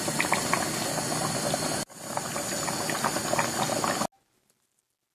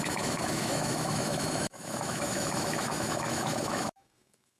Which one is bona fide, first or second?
first